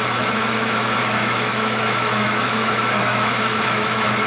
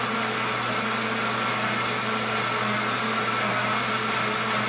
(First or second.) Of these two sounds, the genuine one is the second